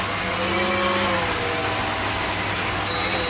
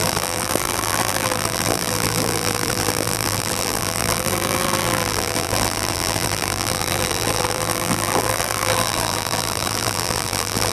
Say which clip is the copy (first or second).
second